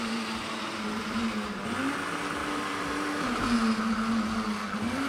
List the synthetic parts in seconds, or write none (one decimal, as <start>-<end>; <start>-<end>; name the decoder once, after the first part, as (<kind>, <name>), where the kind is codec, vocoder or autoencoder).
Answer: 0.0-1.6 (vocoder, BigVGAN v2); 2.4-3.8